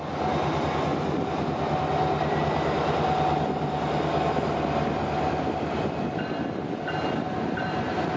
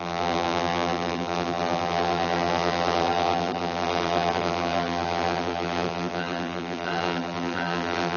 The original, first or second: first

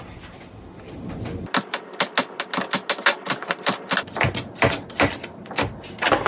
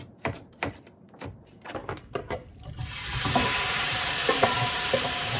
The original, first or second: first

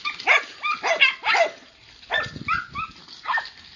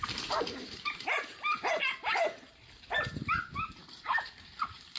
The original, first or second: first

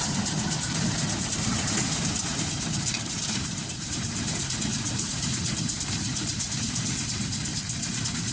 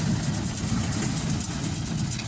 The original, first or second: second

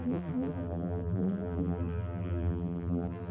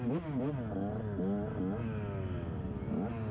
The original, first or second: second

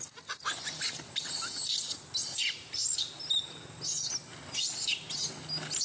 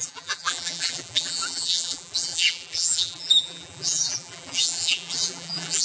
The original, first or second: first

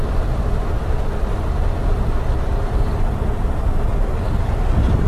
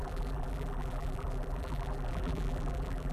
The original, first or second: first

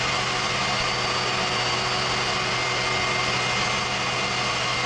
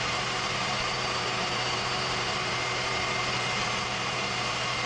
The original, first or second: first